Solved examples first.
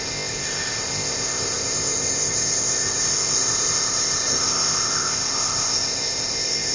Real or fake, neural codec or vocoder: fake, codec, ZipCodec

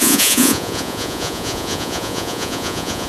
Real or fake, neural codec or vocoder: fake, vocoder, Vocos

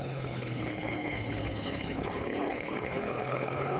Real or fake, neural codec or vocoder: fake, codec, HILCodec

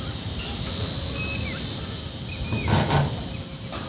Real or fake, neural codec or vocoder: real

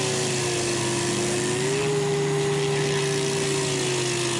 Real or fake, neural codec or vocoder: real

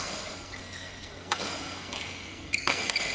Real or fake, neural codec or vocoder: fake, codec, SNAC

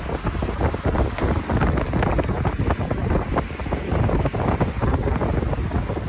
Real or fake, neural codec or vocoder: real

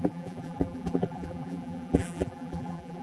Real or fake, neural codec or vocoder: fake, vocoder, BigVGAN v2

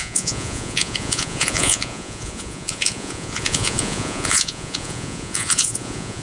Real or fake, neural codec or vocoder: fake, vocoder, Vocos